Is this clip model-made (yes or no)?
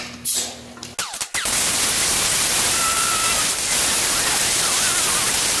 no